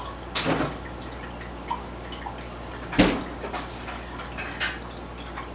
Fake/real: real